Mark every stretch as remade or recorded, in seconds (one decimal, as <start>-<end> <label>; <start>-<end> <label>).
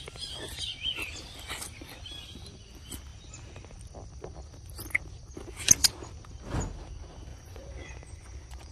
0.0-7.3 recorded; 7.3-8.7 remade